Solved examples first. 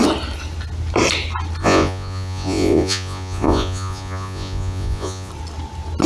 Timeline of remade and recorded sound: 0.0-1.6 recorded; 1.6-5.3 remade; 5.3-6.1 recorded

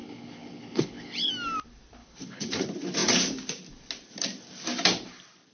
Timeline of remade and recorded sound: 0.0-1.3 remade; 1.3-2.0 recorded; 2.0-2.5 remade; 2.5-5.5 recorded

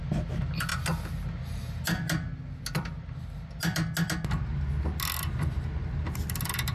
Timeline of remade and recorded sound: 0.0-6.7 recorded

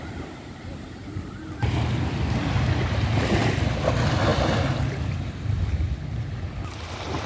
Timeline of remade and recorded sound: 0.0-7.3 recorded

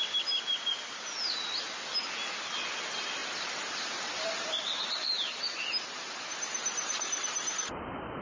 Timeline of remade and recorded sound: 0.0-3.2 recorded; 3.2-8.2 remade

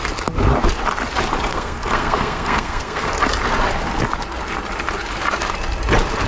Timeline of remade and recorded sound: 0.0-1.5 recorded; 1.5-3.1 remade; 3.1-6.3 recorded

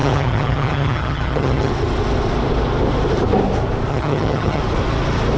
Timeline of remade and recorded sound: 0.0-1.7 remade; 1.7-3.9 recorded; 3.9-4.6 remade; 4.6-5.4 recorded